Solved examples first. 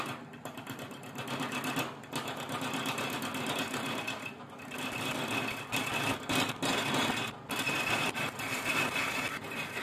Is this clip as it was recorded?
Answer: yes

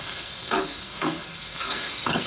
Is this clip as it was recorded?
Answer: no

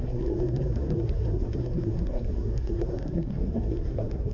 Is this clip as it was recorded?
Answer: no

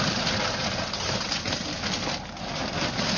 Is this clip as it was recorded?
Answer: yes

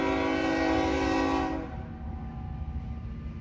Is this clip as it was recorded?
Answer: yes